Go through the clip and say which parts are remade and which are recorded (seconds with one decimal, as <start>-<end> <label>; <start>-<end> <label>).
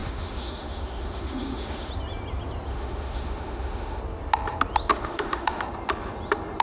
0.0-1.9 remade; 1.9-2.7 recorded; 2.7-4.0 remade; 4.0-4.9 recorded; 4.9-5.6 remade; 5.6-6.6 recorded